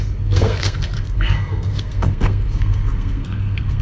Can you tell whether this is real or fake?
fake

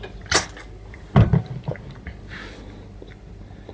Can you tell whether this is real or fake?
real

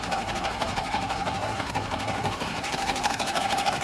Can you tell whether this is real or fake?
fake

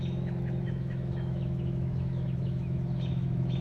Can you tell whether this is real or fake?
fake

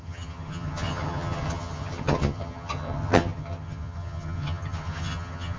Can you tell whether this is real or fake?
fake